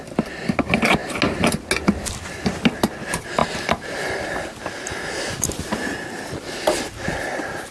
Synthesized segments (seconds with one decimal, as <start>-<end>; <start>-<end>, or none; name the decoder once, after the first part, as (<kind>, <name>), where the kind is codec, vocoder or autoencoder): none